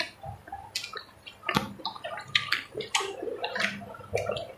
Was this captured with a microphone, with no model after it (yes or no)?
yes